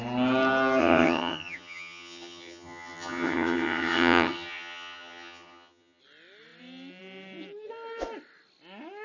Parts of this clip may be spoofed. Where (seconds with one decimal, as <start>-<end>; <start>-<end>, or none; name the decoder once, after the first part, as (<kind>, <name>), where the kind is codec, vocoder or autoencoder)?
0.8-6.0 (vocoder, HiFi-GAN)